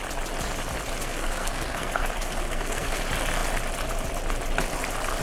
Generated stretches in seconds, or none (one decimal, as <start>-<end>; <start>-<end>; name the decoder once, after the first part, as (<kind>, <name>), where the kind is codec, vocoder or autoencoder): 1.0-3.0 (codec, SNAC)